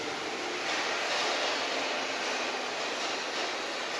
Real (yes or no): yes